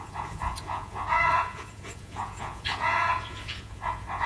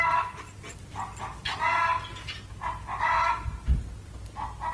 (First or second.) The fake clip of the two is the first